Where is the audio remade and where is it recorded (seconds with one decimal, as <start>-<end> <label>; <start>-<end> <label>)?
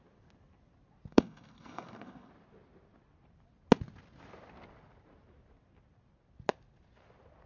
0.0-1.1 recorded; 1.1-2.3 remade; 2.3-7.5 recorded